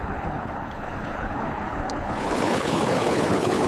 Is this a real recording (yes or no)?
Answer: no